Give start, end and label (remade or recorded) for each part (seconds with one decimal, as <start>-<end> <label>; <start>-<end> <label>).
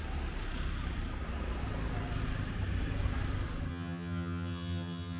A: 0.0-3.7 recorded; 3.7-5.2 remade